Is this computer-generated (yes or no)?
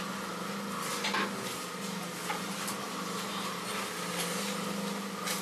no